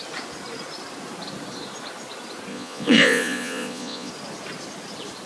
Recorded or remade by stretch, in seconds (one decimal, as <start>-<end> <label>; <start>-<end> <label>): 0.0-2.5 recorded; 2.5-4.1 remade; 4.1-5.3 recorded